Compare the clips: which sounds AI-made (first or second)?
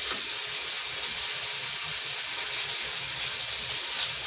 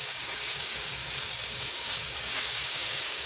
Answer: second